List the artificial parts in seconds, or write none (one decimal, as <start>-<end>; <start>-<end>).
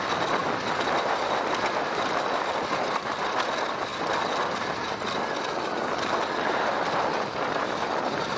none